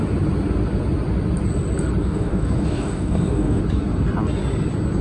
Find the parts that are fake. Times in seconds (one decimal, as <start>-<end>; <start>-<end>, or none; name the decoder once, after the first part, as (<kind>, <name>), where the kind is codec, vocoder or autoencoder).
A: 2.0-3.6 (codec, DAC)